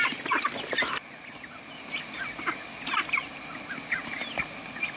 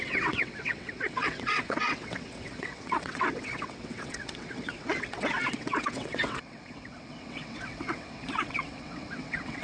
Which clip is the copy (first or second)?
second